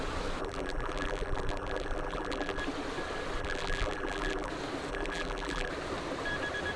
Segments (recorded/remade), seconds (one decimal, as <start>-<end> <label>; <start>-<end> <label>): 0.0-0.4 recorded; 0.4-2.6 remade; 2.6-3.4 recorded; 3.4-4.5 remade; 4.5-4.9 recorded; 4.9-5.7 remade; 5.7-6.8 recorded